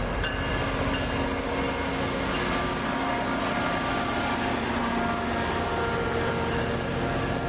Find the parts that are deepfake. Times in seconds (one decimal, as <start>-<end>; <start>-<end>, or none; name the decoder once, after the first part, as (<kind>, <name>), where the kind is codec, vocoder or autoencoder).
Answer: 2.6-3.4 (codec, DAC)